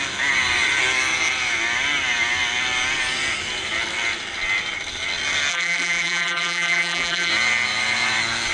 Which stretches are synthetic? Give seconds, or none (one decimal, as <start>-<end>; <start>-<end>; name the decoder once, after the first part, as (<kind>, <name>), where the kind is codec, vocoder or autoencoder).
5.5-7.3 (vocoder, BigVGAN v2)

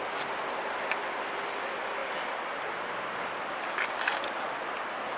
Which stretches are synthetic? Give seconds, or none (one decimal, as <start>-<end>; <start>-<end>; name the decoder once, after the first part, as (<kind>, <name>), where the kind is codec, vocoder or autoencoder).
none